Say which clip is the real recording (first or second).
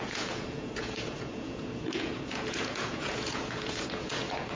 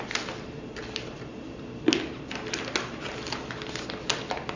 second